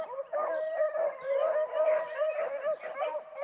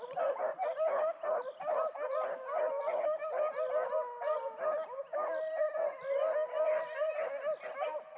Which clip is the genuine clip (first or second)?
second